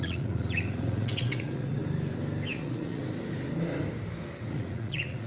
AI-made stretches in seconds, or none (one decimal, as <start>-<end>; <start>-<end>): 0.0-1.8; 2.5-3.0; 4.5-5.3